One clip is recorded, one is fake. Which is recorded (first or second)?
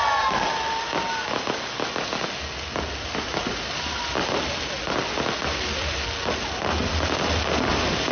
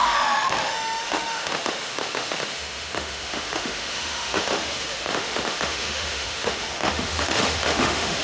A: first